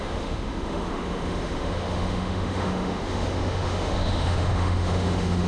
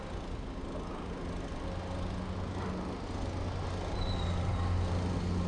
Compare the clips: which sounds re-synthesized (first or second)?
first